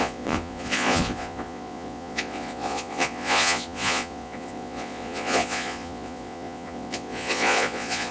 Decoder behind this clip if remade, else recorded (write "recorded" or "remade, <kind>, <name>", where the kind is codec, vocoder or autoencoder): remade, vocoder, Vocos